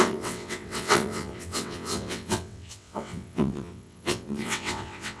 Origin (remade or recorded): remade